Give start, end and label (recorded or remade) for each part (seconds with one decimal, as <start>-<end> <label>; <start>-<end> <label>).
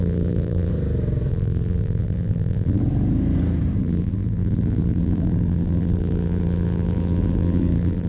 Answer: 0.0-0.7 remade; 0.7-1.3 recorded; 1.3-2.8 remade; 2.8-3.8 recorded; 3.8-8.1 remade